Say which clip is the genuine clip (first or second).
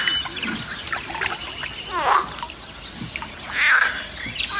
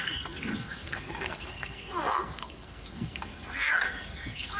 first